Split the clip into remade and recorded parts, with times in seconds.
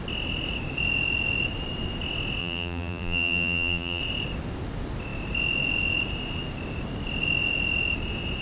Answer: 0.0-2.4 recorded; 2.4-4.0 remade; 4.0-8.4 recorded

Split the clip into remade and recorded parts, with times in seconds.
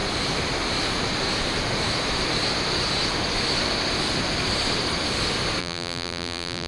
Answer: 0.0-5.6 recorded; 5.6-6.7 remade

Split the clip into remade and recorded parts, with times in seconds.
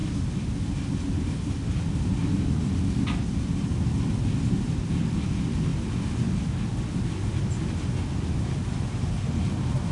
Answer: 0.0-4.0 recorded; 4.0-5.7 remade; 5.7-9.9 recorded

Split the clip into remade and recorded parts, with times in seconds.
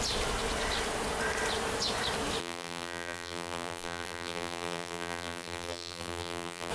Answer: 0.0-2.4 recorded; 2.4-6.7 remade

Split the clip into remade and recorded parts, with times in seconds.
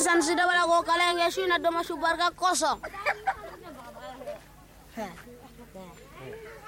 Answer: 0.0-1.5 remade; 1.5-6.7 recorded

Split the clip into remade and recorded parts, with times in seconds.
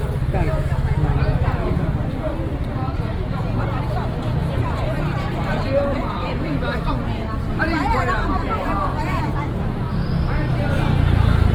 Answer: 0.0-4.4 recorded; 4.4-6.9 remade; 6.9-11.5 recorded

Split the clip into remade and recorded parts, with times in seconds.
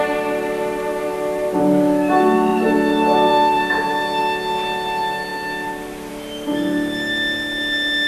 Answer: 0.0-2.5 recorded; 2.5-4.2 remade; 4.2-8.1 recorded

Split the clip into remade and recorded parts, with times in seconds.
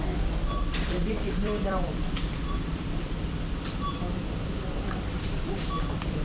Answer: 0.0-6.2 remade